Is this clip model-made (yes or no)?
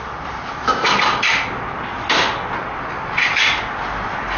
no